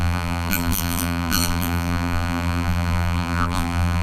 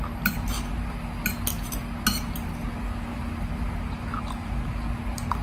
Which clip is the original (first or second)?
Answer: second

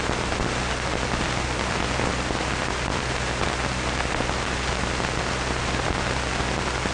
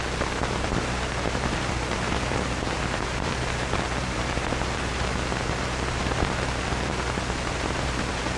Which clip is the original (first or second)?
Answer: first